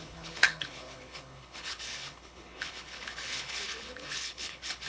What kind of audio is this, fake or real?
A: fake